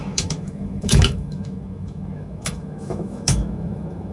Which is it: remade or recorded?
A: remade